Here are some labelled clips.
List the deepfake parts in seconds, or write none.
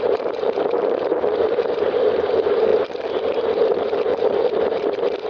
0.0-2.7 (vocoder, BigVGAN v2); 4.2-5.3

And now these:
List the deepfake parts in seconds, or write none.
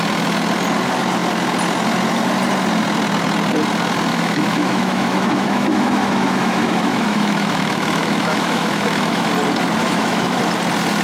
4.1-9.3 (autoencoder, DAC-VAE); 9.8-10.4